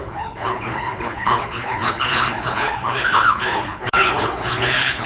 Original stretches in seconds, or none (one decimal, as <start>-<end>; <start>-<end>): none